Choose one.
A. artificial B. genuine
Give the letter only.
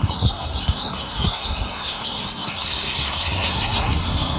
A